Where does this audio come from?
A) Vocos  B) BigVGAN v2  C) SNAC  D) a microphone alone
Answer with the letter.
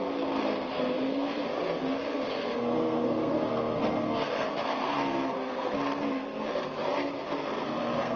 C